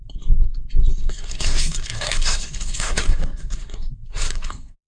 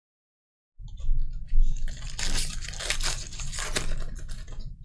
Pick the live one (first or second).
second